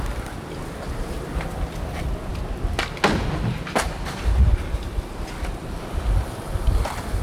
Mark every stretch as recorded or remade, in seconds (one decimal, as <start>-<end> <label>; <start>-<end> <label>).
0.0-7.2 recorded